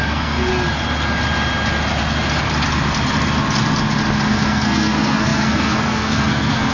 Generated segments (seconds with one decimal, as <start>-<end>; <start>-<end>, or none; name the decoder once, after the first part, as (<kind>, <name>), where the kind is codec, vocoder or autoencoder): 0.0-0.5 (codec, SNAC); 4.3-6.7